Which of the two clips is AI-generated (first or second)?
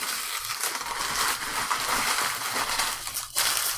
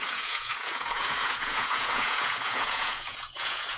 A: second